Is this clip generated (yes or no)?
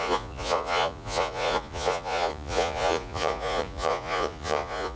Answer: yes